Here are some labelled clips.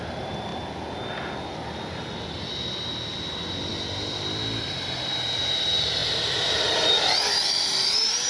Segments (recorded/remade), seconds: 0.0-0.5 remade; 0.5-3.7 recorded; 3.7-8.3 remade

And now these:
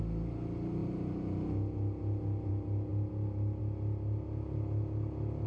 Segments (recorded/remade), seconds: 0.0-5.5 recorded

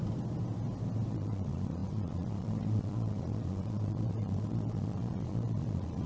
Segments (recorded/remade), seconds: 0.0-1.1 recorded; 1.1-6.1 remade

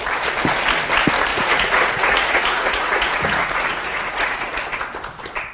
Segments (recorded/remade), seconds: 0.0-1.3 recorded; 1.3-4.6 remade; 4.6-5.5 recorded

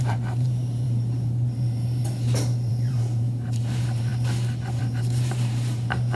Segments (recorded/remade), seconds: 0.0-2.0 remade; 2.0-2.7 recorded; 2.7-4.1 remade; 4.1-4.8 recorded; 4.8-6.2 remade

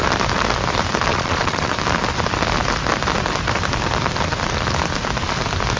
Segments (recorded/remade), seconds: 0.0-1.1 recorded; 1.1-1.7 remade; 1.7-5.8 recorded

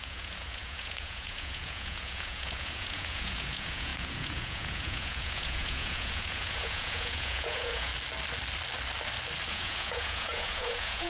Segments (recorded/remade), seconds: 0.0-7.9 remade; 7.9-9.5 recorded; 9.5-11.1 remade

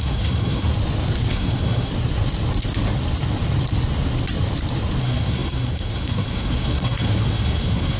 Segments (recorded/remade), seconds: 0.0-0.7 remade; 0.7-1.3 recorded; 1.3-1.9 remade; 1.9-5.0 recorded; 5.0-8.0 remade